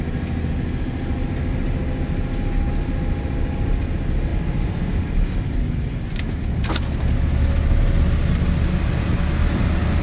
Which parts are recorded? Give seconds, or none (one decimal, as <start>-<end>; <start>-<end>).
0.0-10.0